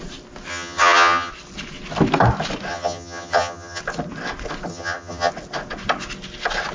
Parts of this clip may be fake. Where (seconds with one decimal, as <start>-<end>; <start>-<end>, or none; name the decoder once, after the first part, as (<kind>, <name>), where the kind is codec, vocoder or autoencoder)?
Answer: 0.5-1.3 (vocoder, HiFi-GAN); 2.7-3.8; 4.7-5.3